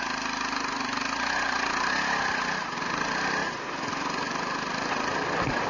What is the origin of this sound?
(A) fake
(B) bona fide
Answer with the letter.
B